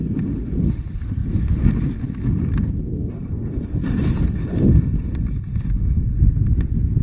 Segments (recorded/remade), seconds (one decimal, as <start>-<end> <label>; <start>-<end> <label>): 0.0-5.5 recorded; 5.5-6.3 remade; 6.3-7.0 recorded